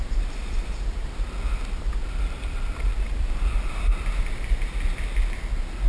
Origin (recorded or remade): recorded